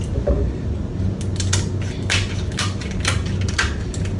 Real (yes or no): yes